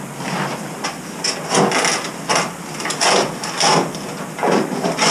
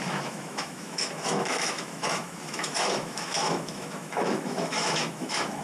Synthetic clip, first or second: second